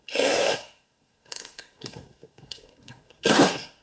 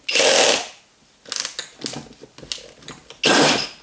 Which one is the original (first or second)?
second